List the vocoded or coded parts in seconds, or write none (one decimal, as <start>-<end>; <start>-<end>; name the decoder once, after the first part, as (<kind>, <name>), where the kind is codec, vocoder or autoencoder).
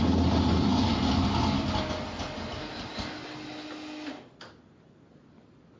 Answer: none